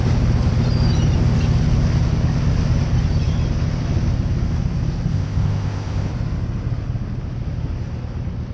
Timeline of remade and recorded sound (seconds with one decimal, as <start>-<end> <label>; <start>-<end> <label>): 0.0-5.1 recorded; 5.1-6.1 remade; 6.1-8.5 recorded